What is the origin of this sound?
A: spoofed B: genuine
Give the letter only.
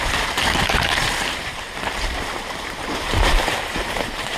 A